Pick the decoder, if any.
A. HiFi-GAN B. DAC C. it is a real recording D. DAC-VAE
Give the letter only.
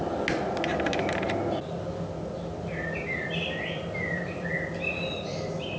C